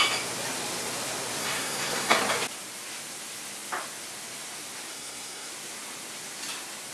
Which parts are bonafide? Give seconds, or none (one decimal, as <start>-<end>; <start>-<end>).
0.0-1.4; 2.2-4.9; 5.5-6.9